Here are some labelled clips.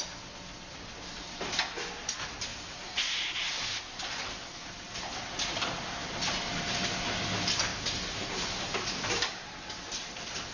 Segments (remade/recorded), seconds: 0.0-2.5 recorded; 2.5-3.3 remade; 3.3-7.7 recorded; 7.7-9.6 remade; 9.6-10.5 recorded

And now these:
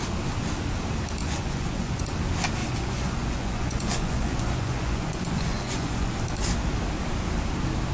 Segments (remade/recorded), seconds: 0.0-1.2 recorded; 1.2-2.0 remade; 2.0-2.6 recorded; 2.6-6.1 remade; 6.1-7.9 recorded

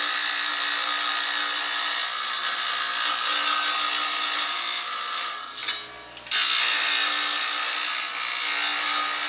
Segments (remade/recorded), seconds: 0.0-9.3 recorded

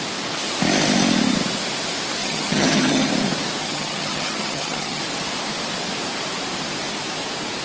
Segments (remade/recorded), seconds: 0.0-2.2 recorded; 2.2-3.1 remade; 3.1-3.6 recorded; 3.6-5.0 remade; 5.0-7.6 recorded